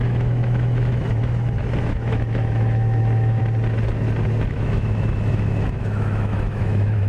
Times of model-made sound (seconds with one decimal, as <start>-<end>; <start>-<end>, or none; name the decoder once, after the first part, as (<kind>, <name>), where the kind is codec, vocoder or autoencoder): 0.0-3.4 (autoencoder, DAC-VAE); 4.5-7.1